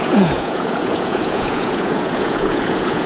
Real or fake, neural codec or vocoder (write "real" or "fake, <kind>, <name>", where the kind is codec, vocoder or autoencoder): fake, vocoder, Vocos